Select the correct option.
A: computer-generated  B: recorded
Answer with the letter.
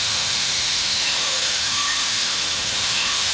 A